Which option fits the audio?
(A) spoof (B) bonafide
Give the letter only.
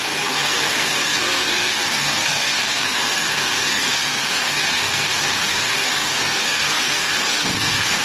A